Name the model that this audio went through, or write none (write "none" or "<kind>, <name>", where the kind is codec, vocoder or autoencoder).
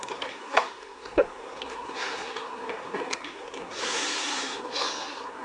codec, SNAC